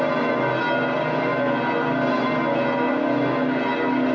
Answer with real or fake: real